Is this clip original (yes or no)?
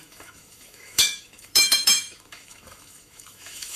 no